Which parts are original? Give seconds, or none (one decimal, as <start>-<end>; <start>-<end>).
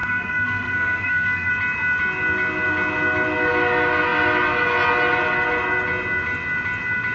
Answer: 1.5-7.1